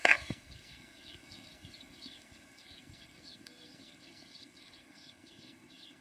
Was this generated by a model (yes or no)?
yes